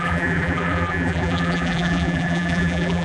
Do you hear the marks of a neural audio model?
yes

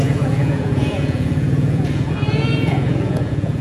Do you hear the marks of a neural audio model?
yes